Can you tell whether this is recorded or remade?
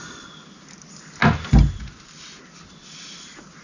recorded